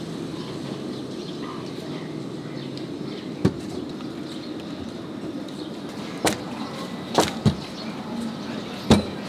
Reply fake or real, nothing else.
real